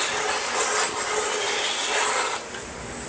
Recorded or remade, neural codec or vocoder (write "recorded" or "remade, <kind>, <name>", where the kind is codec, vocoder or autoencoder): recorded